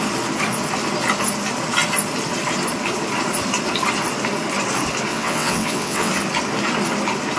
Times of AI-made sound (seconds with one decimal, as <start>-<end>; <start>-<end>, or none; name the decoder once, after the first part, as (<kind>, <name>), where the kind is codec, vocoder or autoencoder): 5.1-6.1 (vocoder, WaveNeXt)